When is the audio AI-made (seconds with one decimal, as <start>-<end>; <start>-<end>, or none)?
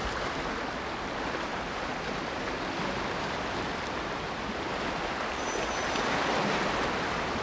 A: none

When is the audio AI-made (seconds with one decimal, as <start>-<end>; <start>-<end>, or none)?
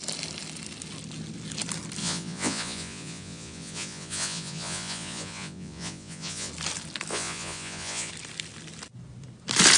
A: 2.0-6.5; 7.1-8.1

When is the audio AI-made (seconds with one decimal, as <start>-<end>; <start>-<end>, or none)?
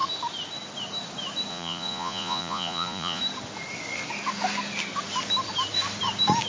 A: 1.5-3.2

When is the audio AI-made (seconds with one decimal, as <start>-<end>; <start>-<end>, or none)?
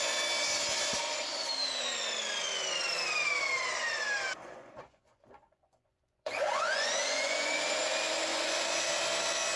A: 4.4-7.6; 8.3-8.8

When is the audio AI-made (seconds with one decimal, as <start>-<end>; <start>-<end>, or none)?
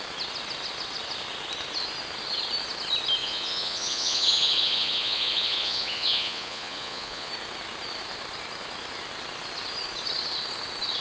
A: 3.2-7.3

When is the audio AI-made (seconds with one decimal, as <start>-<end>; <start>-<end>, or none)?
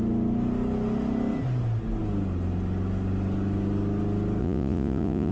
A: 4.4-5.3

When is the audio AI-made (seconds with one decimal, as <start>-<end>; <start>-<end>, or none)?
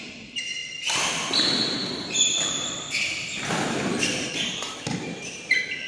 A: none